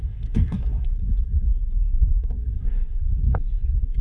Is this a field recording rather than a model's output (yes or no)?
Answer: no